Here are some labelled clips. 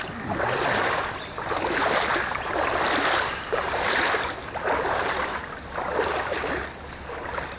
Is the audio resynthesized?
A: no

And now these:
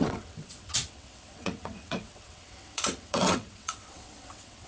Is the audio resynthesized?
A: yes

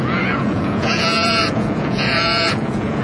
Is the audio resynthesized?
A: yes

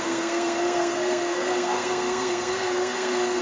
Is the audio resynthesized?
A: yes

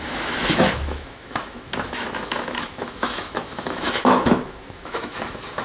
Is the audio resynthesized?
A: yes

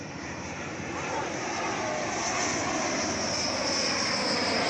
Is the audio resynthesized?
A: no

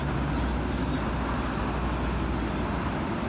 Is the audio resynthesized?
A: no